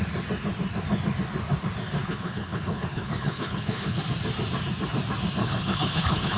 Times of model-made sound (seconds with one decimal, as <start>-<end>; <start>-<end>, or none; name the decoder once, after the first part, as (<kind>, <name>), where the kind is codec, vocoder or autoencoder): 2.0-4.0 (codec, HILCodec); 5.4-6.4